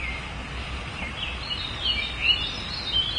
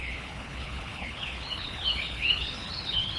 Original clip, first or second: first